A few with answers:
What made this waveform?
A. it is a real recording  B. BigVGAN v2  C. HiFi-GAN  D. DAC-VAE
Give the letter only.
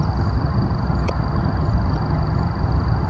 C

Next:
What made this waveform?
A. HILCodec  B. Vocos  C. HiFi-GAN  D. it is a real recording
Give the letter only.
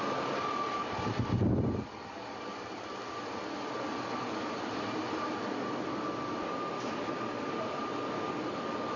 D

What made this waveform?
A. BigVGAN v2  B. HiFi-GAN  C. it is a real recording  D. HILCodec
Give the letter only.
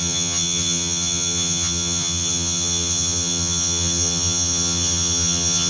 B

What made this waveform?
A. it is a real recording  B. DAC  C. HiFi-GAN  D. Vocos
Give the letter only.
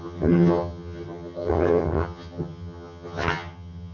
C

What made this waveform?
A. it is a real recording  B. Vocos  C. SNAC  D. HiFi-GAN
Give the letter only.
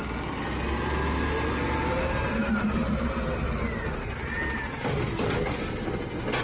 A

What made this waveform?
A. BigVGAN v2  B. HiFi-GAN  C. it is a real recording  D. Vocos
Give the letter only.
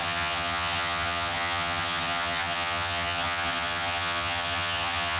B